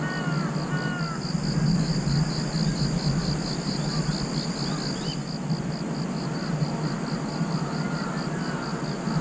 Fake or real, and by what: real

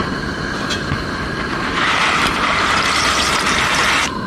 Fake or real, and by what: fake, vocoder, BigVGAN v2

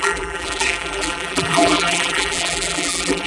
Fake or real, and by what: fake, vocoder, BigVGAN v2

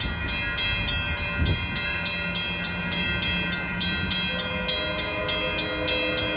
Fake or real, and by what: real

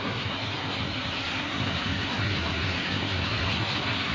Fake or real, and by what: fake, codec, SNAC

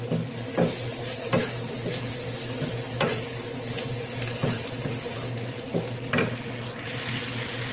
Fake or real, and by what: real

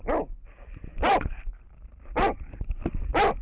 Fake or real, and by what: real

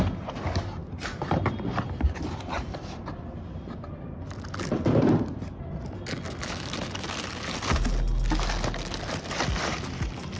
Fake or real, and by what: real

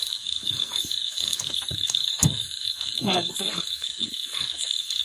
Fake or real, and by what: fake, codec, SNAC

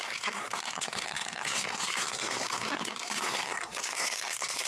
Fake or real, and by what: fake, codec, SNAC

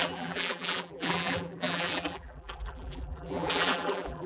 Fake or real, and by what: fake, vocoder, BigVGAN v2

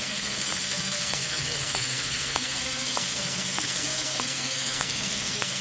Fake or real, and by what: fake, codec, SNAC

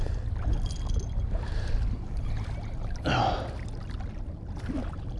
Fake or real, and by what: real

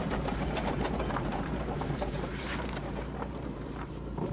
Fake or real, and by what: fake, vocoder, BigVGAN v2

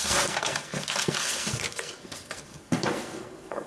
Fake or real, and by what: fake, codec, SNAC